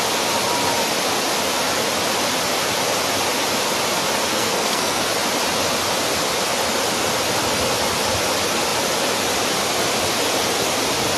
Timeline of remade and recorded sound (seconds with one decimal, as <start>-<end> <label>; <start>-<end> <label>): 0.0-4.3 recorded; 4.3-5.0 remade; 5.0-11.2 recorded